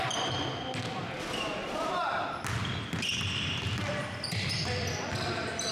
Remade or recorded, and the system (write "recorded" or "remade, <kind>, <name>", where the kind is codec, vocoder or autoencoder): recorded